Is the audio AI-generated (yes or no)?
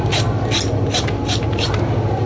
no